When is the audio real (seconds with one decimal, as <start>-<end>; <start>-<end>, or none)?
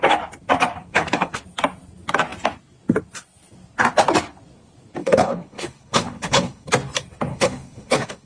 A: 0.0-0.8; 1.4-5.0; 6.7-7.3